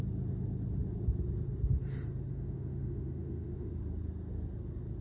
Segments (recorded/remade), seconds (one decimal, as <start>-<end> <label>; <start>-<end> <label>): 0.0-2.3 recorded; 2.3-3.7 remade; 3.7-5.0 recorded